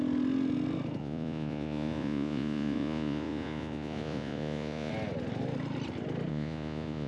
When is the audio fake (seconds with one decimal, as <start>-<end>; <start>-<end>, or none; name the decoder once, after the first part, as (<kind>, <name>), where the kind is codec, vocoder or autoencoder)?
1.0-4.9 (vocoder, Vocos); 6.3-7.1